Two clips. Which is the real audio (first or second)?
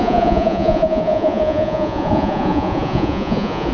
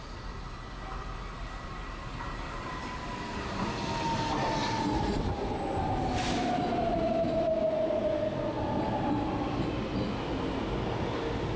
second